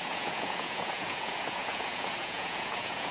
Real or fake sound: fake